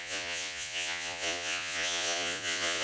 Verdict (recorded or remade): remade